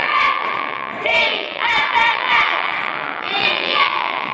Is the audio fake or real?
fake